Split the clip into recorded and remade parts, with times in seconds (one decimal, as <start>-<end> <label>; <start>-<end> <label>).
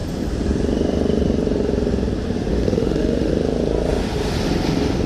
0.0-2.5 recorded; 2.5-3.3 remade; 3.3-5.1 recorded